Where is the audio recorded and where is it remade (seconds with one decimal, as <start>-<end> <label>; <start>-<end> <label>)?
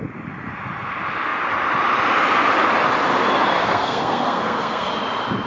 0.0-3.6 recorded; 3.6-4.9 remade; 4.9-5.5 recorded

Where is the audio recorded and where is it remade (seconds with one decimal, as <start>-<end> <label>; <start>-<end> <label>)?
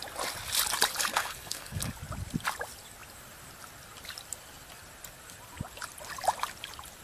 0.0-1.1 recorded; 1.1-1.9 remade; 1.9-7.0 recorded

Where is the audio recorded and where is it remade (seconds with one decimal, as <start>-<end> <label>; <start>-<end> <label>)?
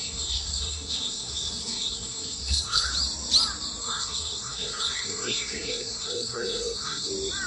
0.0-2.9 remade; 2.9-3.8 recorded; 3.8-7.1 remade; 7.1-7.5 recorded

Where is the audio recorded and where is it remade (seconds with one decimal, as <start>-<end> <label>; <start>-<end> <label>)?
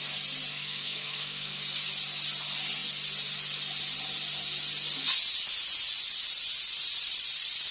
0.0-0.5 recorded; 0.5-1.6 remade; 1.6-7.7 recorded